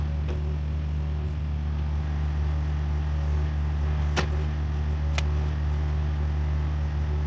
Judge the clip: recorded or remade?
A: recorded